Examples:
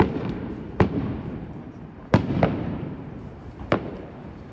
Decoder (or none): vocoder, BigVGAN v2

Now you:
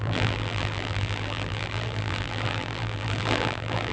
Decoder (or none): vocoder, BigVGAN v2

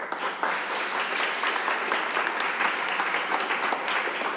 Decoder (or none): none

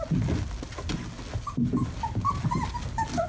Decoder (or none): none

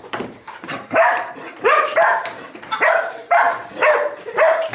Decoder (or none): vocoder, BigVGAN v2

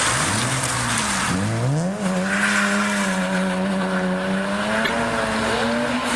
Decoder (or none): none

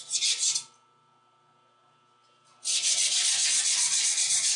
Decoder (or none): none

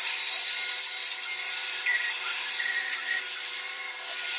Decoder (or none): vocoder, BigVGAN v2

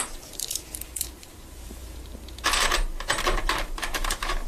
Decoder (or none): vocoder, BigVGAN v2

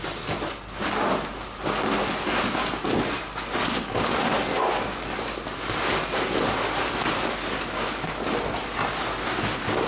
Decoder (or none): none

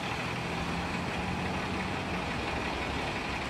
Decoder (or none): none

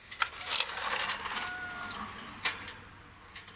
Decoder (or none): none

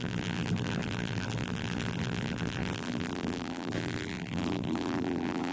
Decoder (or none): vocoder, BigVGAN v2